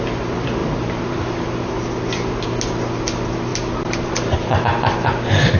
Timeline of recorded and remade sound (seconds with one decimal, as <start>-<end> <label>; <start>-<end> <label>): 0.0-0.6 recorded; 0.6-1.8 remade; 1.8-3.5 recorded; 3.5-4.6 remade; 4.6-5.6 recorded

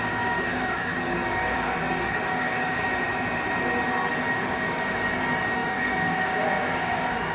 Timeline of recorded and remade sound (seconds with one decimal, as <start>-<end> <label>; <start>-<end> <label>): 0.0-3.1 remade; 3.1-4.3 recorded; 4.3-7.3 remade

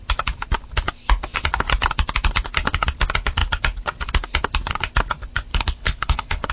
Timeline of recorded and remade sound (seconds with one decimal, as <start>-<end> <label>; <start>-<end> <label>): 0.0-5.5 recorded; 5.5-6.5 remade

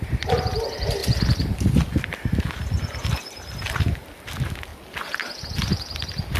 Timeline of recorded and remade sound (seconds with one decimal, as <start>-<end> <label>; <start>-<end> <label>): 0.0-6.4 recorded

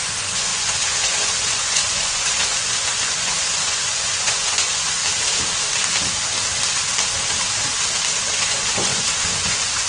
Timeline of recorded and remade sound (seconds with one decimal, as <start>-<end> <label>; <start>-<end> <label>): 0.0-5.0 remade; 5.0-8.3 recorded; 8.3-9.9 remade